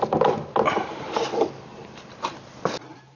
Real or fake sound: fake